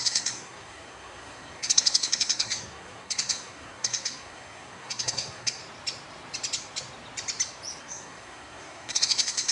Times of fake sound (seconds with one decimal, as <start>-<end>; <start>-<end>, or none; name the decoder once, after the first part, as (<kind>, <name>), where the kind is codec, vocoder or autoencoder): 0.0-5.6 (codec, SNAC); 7.8-9.5